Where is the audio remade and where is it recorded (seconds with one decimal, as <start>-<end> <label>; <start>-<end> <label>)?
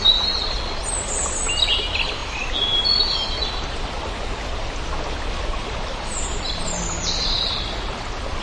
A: 0.0-8.4 recorded